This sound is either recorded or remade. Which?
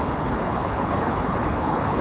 remade